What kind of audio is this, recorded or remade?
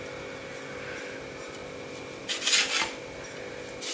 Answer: recorded